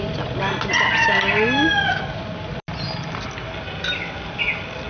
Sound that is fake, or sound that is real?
real